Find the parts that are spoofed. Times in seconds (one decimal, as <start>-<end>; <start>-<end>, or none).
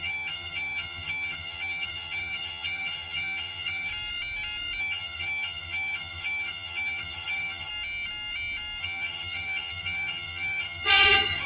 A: 0.0-3.9; 4.8-7.7; 8.8-11.5